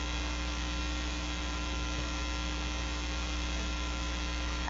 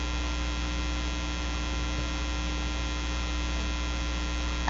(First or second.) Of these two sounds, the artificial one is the first